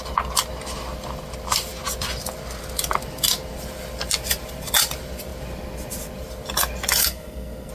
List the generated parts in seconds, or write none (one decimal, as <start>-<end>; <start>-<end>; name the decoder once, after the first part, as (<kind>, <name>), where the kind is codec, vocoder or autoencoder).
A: 7.0-7.7 (codec, SNAC)